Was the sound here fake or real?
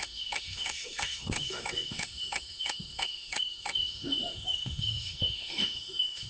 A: fake